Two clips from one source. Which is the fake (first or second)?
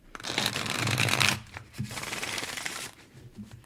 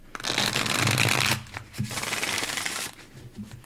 first